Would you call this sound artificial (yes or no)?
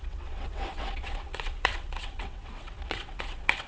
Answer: yes